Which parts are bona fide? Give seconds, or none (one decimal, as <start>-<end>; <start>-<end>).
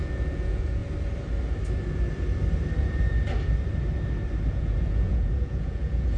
0.8-4.5